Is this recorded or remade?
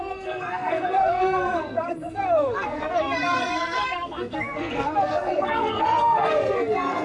remade